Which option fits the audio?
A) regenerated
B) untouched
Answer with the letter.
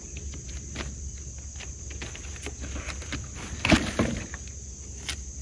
B